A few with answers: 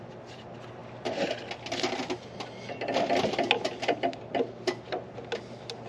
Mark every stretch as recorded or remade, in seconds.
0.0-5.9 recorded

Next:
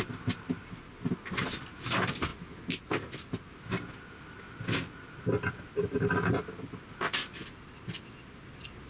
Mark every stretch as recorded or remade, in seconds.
0.0-8.9 recorded

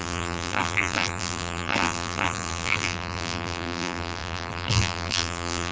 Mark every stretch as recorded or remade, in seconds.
0.0-5.7 remade

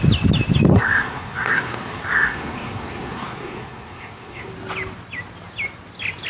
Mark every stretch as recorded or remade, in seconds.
0.0-0.7 recorded; 0.7-4.5 remade; 4.5-6.3 recorded

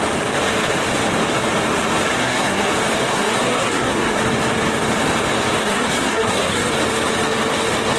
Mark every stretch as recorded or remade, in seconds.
0.0-2.1 recorded; 2.1-2.7 remade; 2.7-3.1 recorded; 3.1-4.2 remade; 4.2-5.6 recorded; 5.6-6.7 remade; 6.7-8.0 recorded